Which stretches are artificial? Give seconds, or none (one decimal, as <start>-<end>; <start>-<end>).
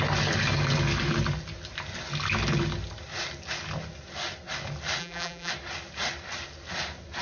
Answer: 5.0-5.5